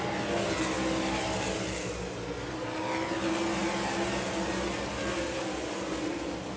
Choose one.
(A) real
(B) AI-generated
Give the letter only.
A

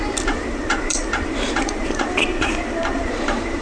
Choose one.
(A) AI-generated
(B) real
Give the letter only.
A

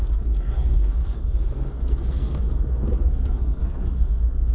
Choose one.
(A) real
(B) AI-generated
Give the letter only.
B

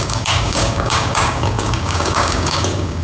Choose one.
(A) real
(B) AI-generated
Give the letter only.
B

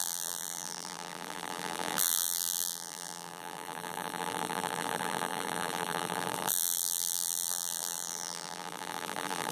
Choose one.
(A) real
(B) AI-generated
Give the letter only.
B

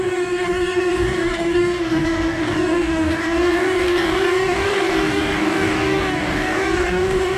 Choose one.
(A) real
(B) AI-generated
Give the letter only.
B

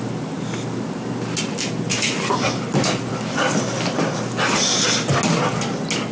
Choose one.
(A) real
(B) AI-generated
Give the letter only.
A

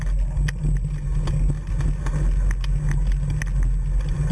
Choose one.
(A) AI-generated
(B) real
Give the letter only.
B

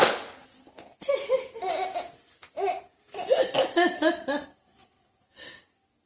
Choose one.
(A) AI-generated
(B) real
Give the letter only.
B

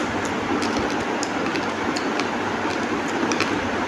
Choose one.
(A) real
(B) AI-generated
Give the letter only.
A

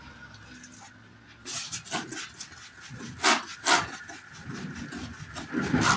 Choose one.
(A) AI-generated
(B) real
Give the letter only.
B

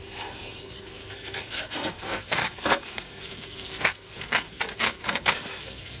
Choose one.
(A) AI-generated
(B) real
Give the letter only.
A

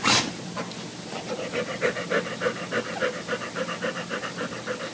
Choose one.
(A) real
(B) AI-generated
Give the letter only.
A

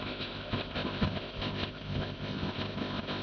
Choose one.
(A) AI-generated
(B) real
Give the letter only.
A